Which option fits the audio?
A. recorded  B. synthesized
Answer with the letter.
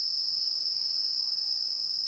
A